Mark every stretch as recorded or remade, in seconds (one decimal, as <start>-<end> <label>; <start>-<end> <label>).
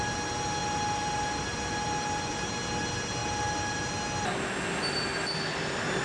0.0-6.0 recorded